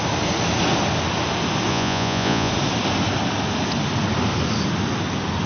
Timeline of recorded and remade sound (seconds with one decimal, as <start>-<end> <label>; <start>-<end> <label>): 0.0-1.7 recorded; 1.7-2.5 remade; 2.5-5.5 recorded